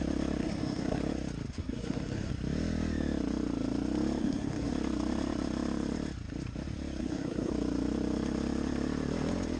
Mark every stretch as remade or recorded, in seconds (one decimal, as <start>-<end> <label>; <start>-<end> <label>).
0.0-0.4 recorded; 0.4-1.0 remade; 1.0-1.6 recorded; 1.6-2.3 remade; 2.3-4.2 recorded; 4.2-4.7 remade; 4.7-7.0 recorded; 7.0-7.5 remade; 7.5-9.6 recorded